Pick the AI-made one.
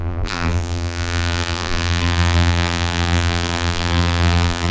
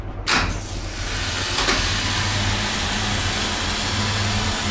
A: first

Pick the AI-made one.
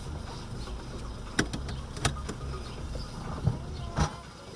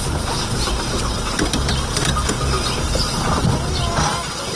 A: second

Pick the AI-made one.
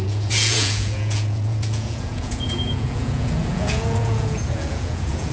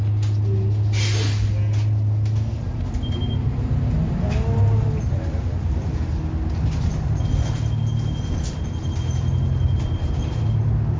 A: first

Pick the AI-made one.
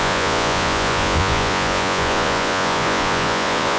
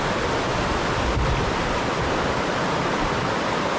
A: first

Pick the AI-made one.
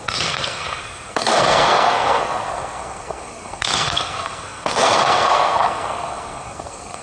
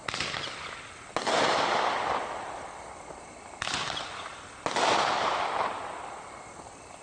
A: first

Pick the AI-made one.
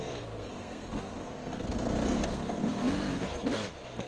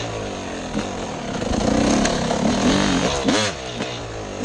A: first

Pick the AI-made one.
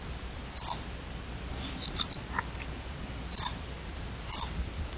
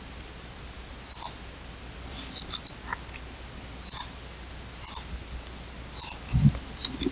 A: first